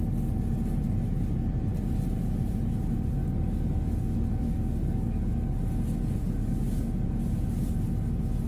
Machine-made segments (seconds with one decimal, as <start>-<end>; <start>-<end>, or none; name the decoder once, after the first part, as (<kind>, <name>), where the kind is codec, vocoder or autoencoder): 3.2-5.6 (codec, DAC); 6.2-6.9

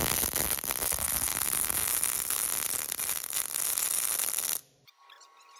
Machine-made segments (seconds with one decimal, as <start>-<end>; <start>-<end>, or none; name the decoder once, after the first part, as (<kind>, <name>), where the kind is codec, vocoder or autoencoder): none

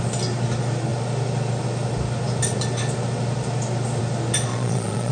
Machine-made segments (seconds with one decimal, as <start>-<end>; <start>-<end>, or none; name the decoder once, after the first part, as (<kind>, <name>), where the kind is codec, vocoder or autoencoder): 4.5-5.1 (vocoder, Vocos)